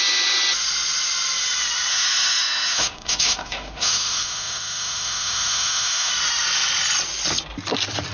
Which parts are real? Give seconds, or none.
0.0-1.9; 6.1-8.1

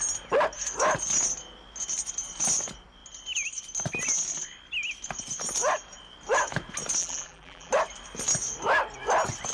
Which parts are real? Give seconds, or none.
0.0-7.0; 7.7-9.5

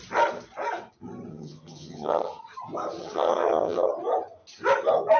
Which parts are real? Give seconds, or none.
0.0-1.3; 2.4-3.0; 3.9-5.2

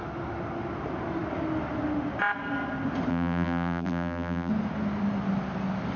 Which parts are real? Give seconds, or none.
0.0-3.1; 4.5-6.0

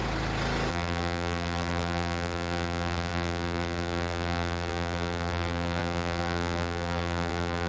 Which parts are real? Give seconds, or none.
0.0-0.7

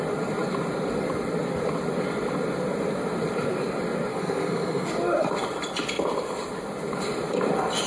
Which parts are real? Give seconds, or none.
0.0-4.1; 4.9-7.9